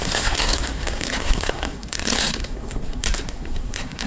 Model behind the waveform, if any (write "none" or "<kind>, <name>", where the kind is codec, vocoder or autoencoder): codec, SNAC